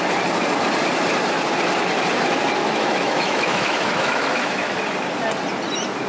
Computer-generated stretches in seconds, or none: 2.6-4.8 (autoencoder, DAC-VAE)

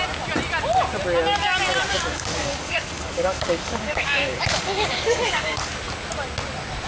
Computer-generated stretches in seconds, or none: 1.9-5.7 (codec, DAC)